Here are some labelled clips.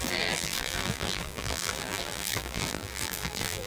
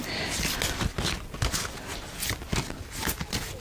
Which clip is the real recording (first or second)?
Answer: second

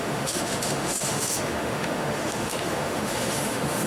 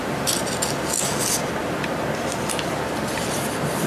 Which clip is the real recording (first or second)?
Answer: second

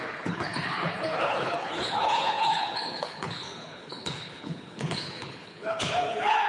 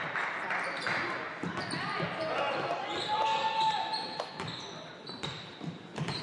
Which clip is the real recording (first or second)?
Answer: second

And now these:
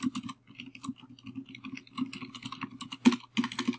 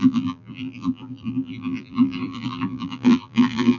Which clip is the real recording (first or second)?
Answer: first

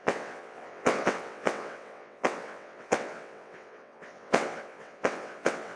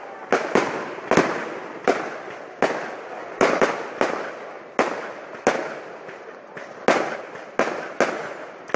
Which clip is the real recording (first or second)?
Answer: second